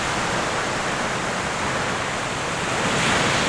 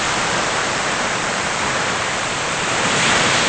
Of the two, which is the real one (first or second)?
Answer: first